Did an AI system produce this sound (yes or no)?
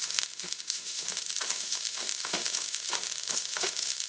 yes